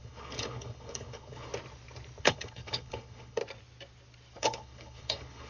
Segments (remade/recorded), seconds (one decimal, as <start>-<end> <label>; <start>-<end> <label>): 0.0-1.5 remade; 1.5-2.2 recorded; 2.2-3.4 remade; 3.4-4.4 recorded; 4.4-5.5 remade